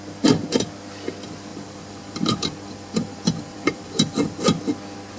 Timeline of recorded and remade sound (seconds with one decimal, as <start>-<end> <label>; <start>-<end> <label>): 0.0-1.5 recorded; 1.5-4.6 remade; 4.6-5.2 recorded